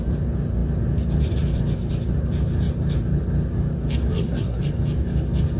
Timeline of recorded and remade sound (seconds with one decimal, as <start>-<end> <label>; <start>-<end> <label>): 0.0-4.1 recorded; 4.1-4.6 remade; 4.6-5.6 recorded